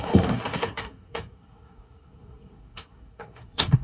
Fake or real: fake